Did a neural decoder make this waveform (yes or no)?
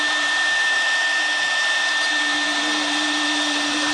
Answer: yes